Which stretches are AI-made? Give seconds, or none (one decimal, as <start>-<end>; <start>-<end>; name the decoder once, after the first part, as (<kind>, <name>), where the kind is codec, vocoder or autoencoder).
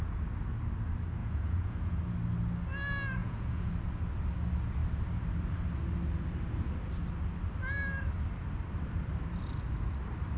1.2-2.0 (vocoder, Vocos); 3.2-3.7